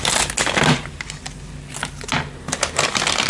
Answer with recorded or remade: recorded